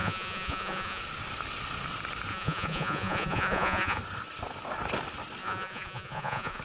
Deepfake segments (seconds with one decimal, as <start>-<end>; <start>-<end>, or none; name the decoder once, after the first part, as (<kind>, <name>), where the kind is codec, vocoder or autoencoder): 0.0-1.0 (vocoder, Vocos); 2.3-4.0; 5.4-6.6